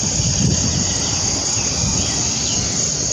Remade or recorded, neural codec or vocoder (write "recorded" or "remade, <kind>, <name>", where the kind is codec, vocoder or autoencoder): recorded